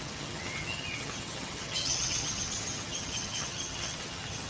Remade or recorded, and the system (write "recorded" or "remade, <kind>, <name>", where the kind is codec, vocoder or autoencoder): remade, vocoder, HiFi-GAN